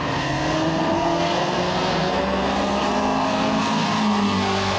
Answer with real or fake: fake